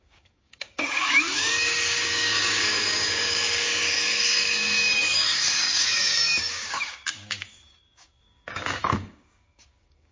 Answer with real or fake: fake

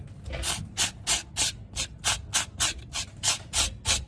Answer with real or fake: real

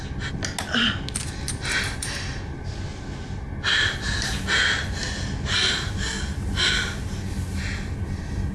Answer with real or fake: real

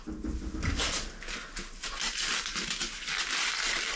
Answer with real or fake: real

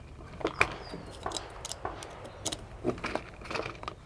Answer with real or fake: real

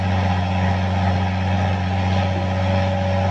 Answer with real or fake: real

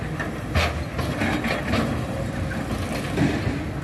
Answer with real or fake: real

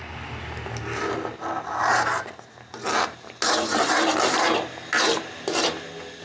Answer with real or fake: real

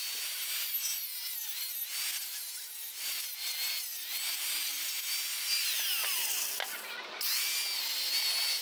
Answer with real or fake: real